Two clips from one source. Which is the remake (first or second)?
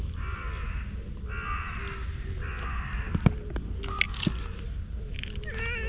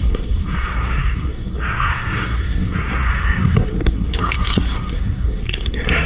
second